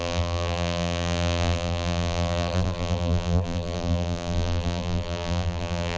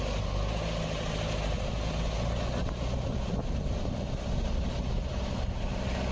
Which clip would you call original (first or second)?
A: second